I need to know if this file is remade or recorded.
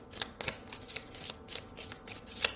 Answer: recorded